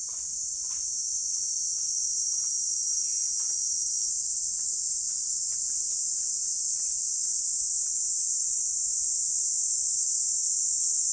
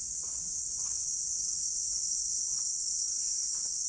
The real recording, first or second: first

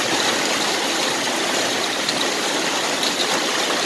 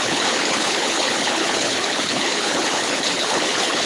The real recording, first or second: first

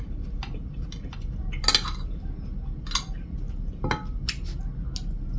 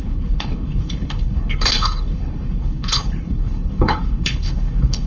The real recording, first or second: first